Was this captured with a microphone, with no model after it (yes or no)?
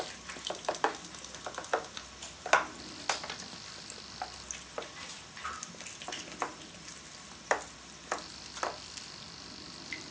yes